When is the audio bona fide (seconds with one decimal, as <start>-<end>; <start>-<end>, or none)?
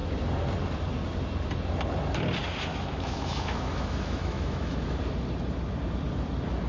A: 0.0-2.7; 5.0-6.7